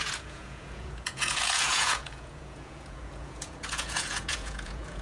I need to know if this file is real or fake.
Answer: fake